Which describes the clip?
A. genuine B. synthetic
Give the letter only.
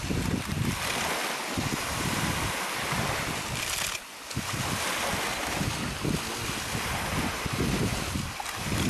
A